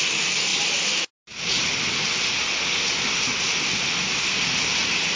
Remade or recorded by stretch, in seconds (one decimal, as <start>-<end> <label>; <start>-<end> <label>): 0.0-5.2 recorded